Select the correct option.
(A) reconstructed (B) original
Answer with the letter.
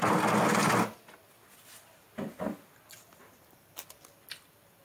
B